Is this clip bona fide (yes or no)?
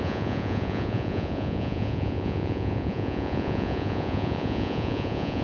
no